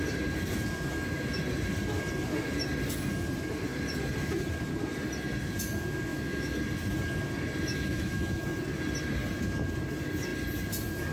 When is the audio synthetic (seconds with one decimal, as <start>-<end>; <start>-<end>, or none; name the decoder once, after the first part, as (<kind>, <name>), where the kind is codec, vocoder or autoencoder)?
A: 6.1-6.6 (autoencoder, DAC-VAE); 7.7-8.6